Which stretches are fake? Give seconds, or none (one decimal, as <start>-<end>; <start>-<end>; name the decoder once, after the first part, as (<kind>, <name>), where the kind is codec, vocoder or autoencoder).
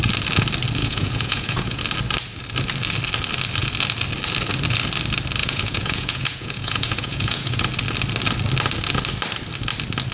0.8-1.8 (vocoder, Vocos); 5.4-7.6